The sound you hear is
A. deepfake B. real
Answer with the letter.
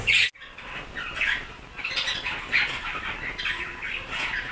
B